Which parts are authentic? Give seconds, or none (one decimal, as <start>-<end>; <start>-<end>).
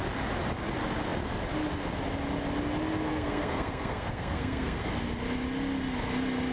0.0-3.1; 4.9-6.5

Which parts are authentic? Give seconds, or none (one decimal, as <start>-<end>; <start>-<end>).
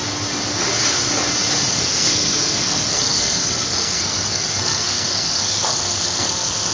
0.0-1.7